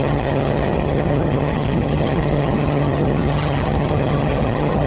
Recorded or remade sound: remade